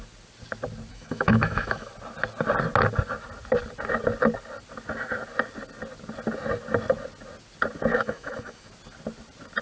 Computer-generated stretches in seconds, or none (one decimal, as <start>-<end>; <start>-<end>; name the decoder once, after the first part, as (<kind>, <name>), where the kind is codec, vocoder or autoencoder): 0.9-1.9 (autoencoder, DAC-VAE); 7.9-8.7